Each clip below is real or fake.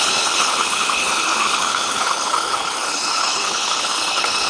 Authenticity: fake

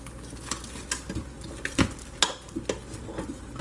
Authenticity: real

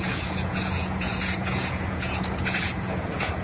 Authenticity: fake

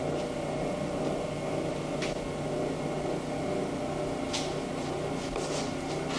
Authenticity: real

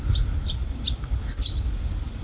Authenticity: real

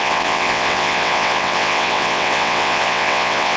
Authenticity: fake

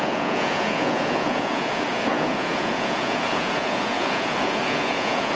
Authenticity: fake